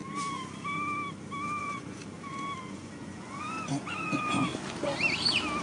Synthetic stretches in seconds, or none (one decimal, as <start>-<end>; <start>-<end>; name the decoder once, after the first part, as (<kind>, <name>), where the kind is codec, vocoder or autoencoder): 1.6-2.0 (vocoder, Vocos); 2.6-4.5